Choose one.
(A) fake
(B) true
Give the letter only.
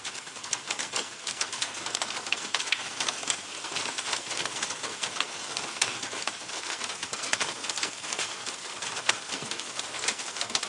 A